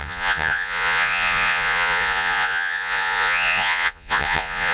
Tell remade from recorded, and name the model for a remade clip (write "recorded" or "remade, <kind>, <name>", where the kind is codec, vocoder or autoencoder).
remade, vocoder, Vocos